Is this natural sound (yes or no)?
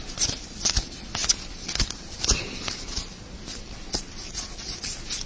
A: yes